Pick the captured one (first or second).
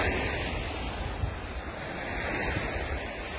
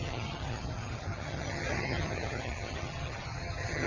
first